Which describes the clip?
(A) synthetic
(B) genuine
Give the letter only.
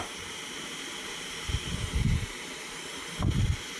A